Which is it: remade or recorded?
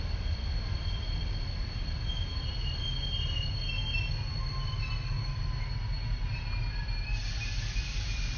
recorded